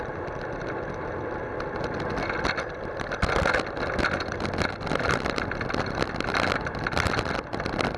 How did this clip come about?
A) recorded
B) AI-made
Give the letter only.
A